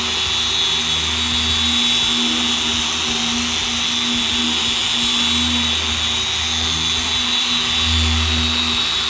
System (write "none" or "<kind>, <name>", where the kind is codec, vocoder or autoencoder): none